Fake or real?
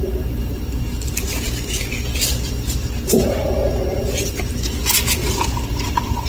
real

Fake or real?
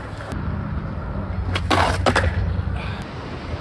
real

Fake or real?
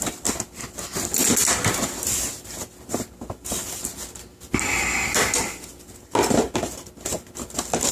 real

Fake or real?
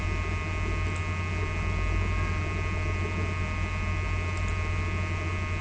real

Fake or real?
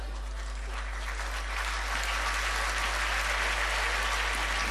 real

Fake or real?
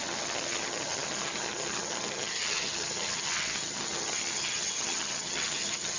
fake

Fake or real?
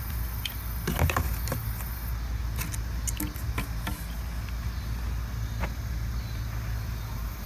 real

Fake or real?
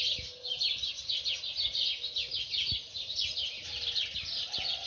real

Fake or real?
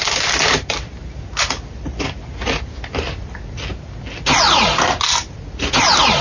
real